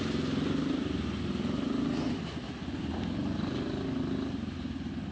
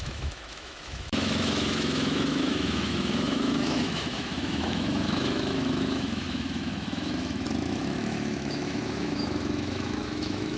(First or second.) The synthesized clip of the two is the second